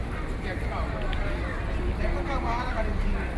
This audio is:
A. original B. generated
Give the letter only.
A